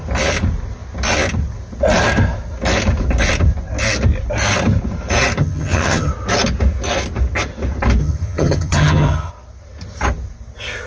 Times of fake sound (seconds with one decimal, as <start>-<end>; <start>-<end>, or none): 5.4-6.1; 8.0-9.3